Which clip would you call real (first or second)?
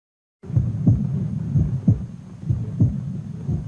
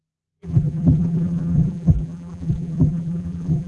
first